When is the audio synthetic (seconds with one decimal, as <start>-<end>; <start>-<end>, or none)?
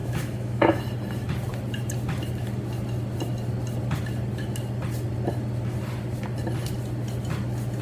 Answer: 0.0-0.8